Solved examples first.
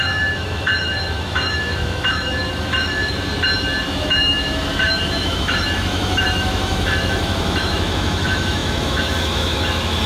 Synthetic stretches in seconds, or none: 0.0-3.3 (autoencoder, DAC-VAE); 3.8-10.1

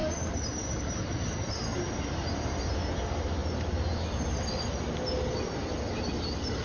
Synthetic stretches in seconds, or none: 0.0-1.0 (vocoder, BigVGAN v2); 1.7-2.7

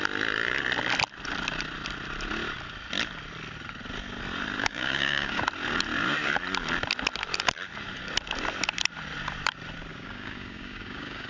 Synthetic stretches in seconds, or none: 4.6-5.4 (codec, DAC); 9.9-11.3

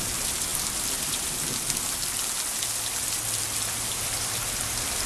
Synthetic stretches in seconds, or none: 0.0-0.5 (vocoder, BigVGAN v2); 3.6-5.1

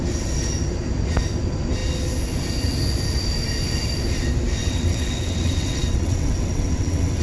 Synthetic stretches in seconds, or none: 4.6-7.2 (vocoder, WaveNeXt)